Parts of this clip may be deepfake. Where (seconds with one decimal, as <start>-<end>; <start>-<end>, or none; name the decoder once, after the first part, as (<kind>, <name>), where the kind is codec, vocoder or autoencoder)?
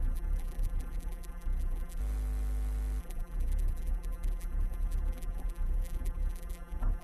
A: 0.0-2.0 (vocoder, BigVGAN v2); 3.0-7.0